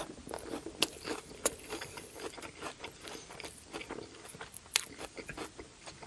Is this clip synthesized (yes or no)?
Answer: yes